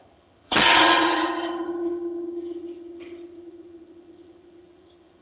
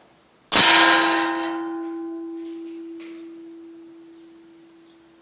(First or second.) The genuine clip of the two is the second